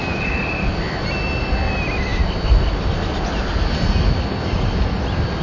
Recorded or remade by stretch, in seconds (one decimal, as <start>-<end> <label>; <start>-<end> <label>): 0.0-5.4 recorded